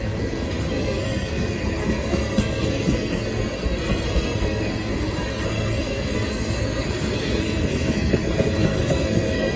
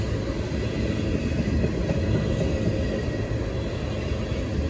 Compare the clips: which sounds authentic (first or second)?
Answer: second